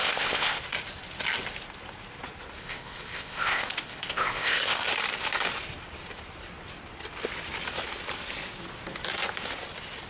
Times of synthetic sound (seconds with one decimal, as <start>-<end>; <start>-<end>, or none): 0.0-0.6; 2.6-4.9